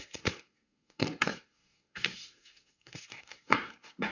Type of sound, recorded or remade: remade